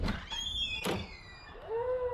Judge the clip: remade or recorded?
remade